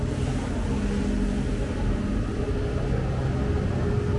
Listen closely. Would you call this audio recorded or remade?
recorded